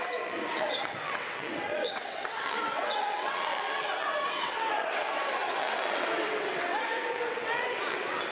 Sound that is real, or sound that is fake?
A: fake